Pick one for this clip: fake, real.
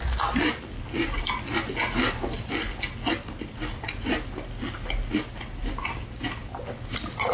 real